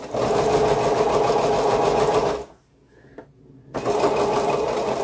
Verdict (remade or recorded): recorded